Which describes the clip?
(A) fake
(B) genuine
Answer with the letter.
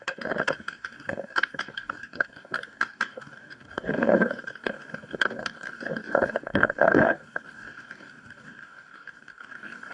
A